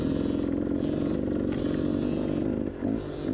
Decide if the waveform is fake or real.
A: real